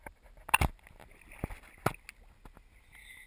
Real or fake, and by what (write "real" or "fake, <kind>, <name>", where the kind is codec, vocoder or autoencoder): real